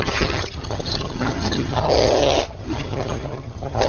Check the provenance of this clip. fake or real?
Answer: fake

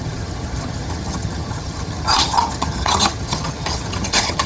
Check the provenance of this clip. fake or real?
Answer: fake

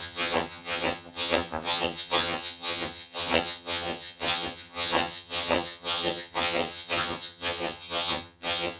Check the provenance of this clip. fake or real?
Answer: fake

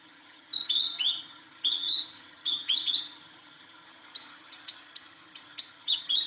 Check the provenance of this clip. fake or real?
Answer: fake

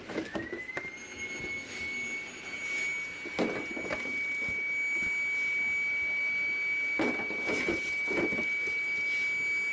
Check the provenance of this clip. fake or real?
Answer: real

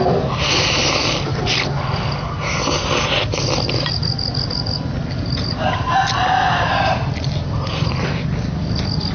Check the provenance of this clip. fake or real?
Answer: real